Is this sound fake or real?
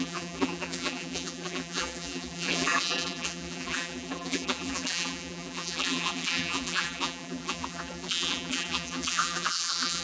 fake